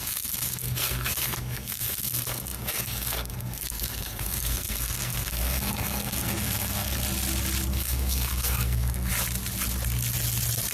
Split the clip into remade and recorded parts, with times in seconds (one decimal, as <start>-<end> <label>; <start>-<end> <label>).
0.0-7.0 remade; 7.0-7.7 recorded; 7.7-9.1 remade; 9.1-10.7 recorded